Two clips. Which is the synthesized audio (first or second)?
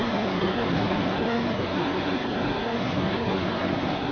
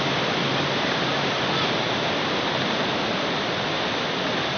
first